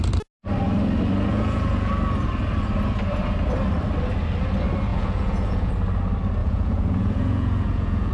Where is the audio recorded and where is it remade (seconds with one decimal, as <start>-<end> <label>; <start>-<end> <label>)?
0.0-1.3 recorded; 1.3-1.9 remade; 1.9-4.9 recorded; 4.9-5.7 remade; 5.7-6.4 recorded; 6.4-8.1 remade